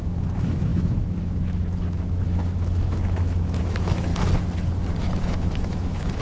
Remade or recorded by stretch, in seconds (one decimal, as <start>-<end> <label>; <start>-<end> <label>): 0.0-4.1 remade; 4.1-5.0 recorded; 5.0-6.2 remade